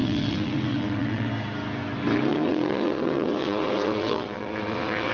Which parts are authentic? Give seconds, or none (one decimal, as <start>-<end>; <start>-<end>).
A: 1.3-2.3